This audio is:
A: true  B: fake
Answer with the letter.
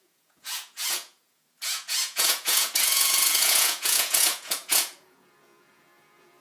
B